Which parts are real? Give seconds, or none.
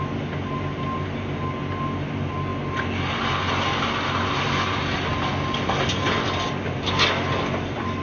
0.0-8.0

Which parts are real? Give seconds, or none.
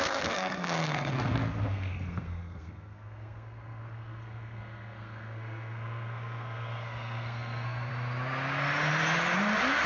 7.9-9.9